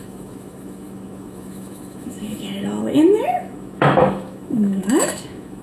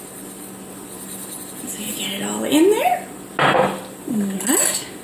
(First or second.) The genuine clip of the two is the second